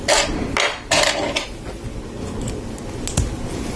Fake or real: real